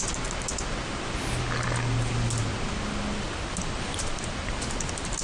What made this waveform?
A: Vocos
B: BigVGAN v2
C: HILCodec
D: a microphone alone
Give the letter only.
D